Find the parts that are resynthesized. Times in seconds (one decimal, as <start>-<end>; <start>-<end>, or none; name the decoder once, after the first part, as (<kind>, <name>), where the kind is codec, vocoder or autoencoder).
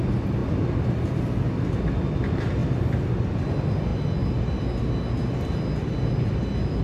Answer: 2.6-3.5 (vocoder, BigVGAN v2)